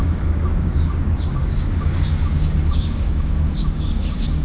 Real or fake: fake